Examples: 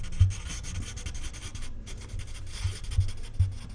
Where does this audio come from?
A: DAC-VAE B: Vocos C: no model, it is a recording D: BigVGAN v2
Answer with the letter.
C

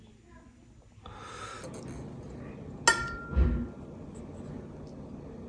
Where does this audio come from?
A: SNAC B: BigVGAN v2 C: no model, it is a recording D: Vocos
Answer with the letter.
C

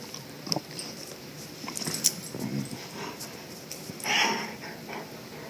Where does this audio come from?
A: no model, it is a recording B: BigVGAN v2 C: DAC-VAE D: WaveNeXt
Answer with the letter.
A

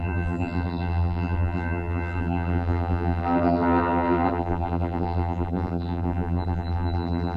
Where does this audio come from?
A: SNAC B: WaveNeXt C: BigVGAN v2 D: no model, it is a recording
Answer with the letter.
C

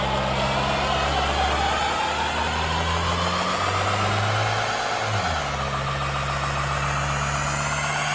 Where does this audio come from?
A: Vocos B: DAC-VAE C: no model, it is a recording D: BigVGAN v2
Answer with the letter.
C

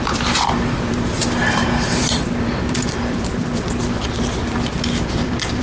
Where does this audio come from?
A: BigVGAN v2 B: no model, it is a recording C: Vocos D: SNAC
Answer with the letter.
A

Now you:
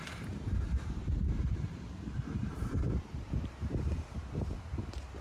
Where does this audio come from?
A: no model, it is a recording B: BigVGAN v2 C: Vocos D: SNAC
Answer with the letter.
B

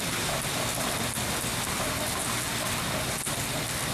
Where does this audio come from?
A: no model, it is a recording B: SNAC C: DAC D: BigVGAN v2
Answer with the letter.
A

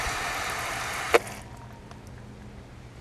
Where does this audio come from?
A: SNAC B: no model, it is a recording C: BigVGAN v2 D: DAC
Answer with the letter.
B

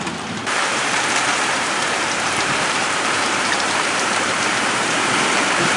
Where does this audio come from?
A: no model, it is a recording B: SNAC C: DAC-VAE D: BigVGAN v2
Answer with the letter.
D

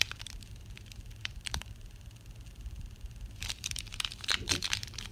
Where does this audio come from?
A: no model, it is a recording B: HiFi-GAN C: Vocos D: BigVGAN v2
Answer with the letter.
D